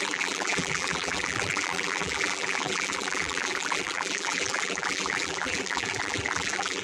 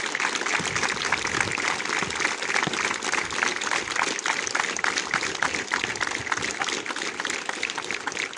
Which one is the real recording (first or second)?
second